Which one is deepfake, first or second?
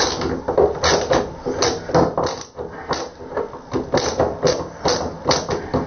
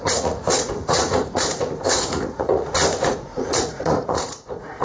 second